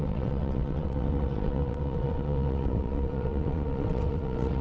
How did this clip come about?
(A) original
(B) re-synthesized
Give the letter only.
B